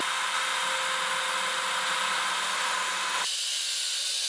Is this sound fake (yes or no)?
no